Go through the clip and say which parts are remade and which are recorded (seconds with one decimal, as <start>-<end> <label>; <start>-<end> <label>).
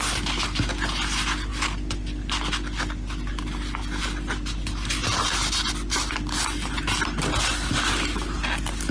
0.0-8.9 recorded